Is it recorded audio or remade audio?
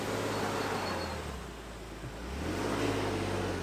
recorded